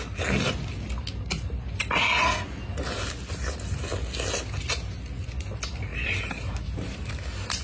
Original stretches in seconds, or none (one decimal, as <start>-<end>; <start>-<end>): 0.0-5.9; 7.1-7.6